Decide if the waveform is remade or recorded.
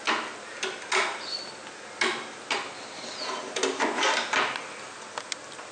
recorded